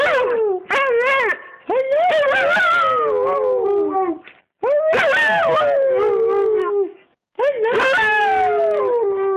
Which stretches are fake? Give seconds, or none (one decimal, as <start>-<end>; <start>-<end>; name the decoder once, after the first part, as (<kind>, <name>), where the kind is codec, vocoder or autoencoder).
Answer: 6.4-8.8 (codec, DAC)